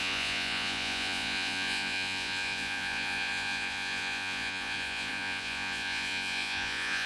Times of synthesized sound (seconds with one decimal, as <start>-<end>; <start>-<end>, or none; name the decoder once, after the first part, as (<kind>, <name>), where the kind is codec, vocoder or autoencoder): 0.0-7.1 (vocoder, Vocos)